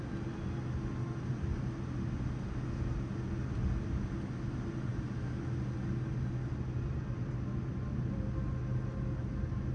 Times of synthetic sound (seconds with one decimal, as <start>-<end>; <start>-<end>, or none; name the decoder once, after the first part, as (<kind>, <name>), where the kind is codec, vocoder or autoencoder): none